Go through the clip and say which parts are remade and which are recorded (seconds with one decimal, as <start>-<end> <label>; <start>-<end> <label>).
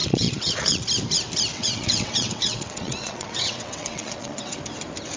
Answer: 0.0-0.8 remade; 0.8-1.5 recorded; 1.5-4.6 remade; 4.6-5.2 recorded